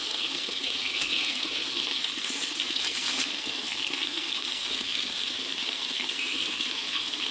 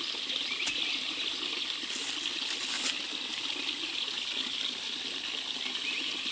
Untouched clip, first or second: second